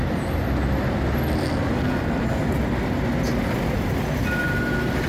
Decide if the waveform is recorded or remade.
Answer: recorded